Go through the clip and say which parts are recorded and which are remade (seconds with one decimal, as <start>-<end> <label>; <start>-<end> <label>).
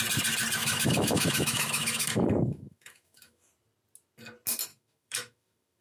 0.0-0.6 recorded; 0.6-3.5 remade; 3.5-4.7 recorded; 4.7-5.8 remade